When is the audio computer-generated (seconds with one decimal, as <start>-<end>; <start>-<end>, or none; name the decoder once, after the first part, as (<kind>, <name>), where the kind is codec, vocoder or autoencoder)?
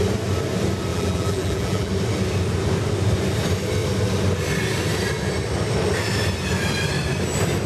0.9-1.9 (vocoder, BigVGAN v2)